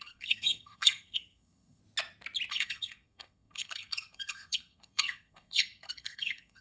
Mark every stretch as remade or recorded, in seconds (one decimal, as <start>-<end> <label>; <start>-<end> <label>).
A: 0.0-1.8 remade; 1.8-2.5 recorded; 2.5-6.6 remade

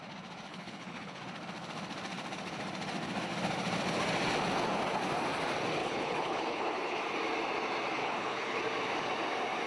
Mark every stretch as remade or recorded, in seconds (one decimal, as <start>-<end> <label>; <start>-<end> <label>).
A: 0.0-0.5 recorded; 0.5-1.2 remade; 1.2-5.8 recorded; 5.8-7.0 remade; 7.0-8.0 recorded; 8.0-8.6 remade; 8.6-9.7 recorded